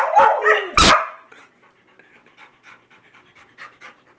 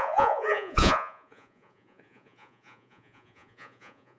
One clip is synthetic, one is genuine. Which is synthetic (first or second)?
second